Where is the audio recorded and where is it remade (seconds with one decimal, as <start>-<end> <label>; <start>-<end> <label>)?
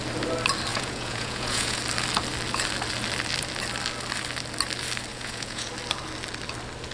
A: 0.0-0.7 recorded; 0.7-1.8 remade; 1.8-5.1 recorded; 5.1-5.7 remade; 5.7-6.9 recorded